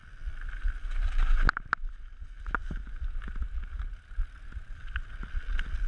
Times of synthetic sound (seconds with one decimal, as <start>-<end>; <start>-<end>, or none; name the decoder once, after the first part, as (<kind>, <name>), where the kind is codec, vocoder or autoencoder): none